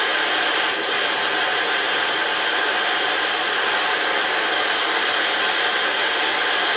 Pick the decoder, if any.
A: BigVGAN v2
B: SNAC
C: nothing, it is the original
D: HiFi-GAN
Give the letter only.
C